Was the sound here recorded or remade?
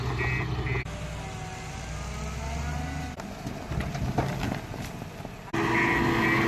recorded